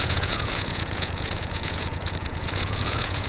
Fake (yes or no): yes